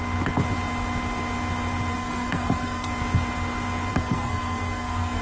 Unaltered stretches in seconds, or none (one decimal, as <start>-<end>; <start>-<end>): 0.0-1.9; 2.9-3.9